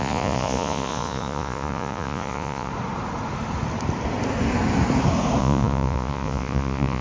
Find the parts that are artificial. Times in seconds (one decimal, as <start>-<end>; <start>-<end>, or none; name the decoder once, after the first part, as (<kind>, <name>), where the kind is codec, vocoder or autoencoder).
0.0-2.7 (vocoder, Vocos); 5.4-7.0